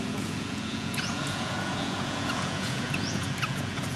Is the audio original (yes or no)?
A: no